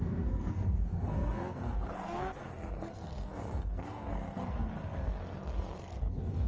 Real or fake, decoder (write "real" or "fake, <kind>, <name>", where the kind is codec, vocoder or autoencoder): fake, codec, SNAC